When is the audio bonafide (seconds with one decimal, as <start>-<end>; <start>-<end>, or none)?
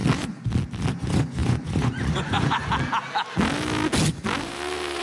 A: 0.0-0.9; 2.6-5.0